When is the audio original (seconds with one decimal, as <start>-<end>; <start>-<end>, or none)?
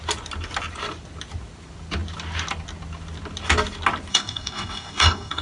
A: 0.0-4.1